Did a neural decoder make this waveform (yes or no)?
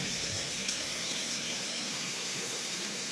yes